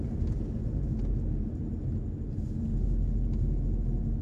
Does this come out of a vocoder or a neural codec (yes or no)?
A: no